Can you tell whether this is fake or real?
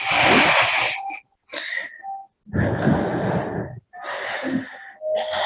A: real